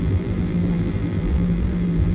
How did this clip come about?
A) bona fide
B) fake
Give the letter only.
B